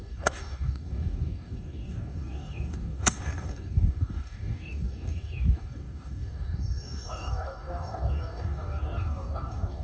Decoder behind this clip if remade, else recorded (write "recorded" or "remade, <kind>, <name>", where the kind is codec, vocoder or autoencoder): remade, codec, DAC